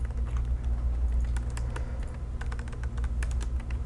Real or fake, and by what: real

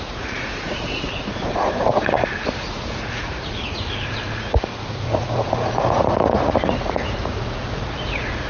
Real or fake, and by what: fake, vocoder, Vocos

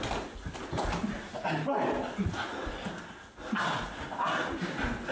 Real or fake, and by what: real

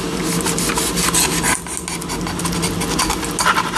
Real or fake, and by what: real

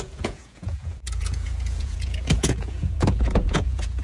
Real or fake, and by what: fake, vocoder, Vocos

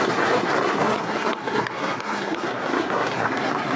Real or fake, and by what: fake, codec, SNAC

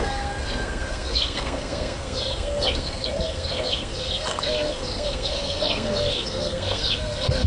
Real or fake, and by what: fake, codec, SNAC